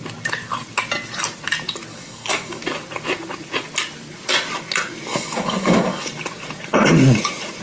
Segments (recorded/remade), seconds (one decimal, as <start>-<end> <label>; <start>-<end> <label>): 0.0-1.9 recorded; 1.9-2.6 remade; 2.6-5.1 recorded; 5.1-6.1 remade; 6.1-7.6 recorded